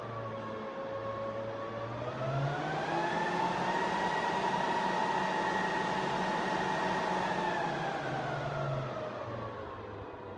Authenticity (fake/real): real